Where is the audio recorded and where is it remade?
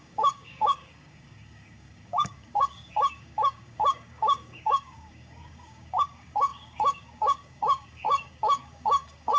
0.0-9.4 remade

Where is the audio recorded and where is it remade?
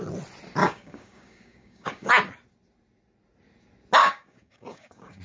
0.0-0.6 recorded; 0.6-2.1 remade; 2.1-4.0 recorded; 4.0-5.2 remade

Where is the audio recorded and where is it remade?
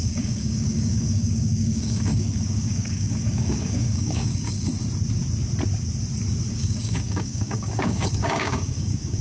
0.0-4.7 remade; 4.7-6.5 recorded; 6.5-9.2 remade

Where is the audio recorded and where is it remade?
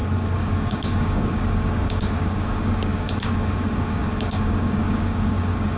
0.0-5.8 remade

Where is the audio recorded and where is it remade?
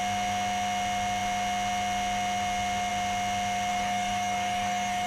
0.0-3.7 recorded; 3.7-5.1 remade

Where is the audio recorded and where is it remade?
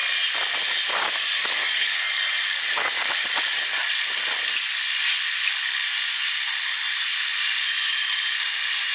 0.0-1.4 recorded; 1.4-2.0 remade; 2.0-8.9 recorded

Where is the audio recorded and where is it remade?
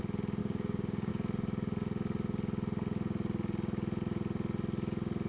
0.0-0.4 recorded; 0.4-1.1 remade; 1.1-5.3 recorded